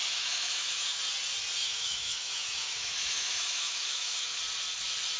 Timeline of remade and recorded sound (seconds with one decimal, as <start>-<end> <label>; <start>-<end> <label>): 0.0-1.0 remade; 1.0-1.6 recorded; 1.6-4.4 remade; 4.4-5.2 recorded